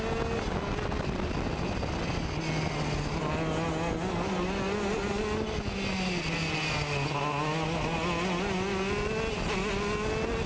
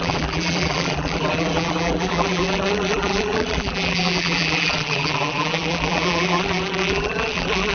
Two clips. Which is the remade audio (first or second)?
second